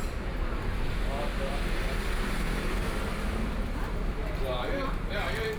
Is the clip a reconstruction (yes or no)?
no